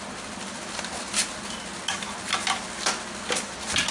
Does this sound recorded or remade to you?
recorded